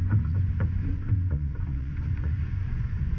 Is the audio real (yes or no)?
no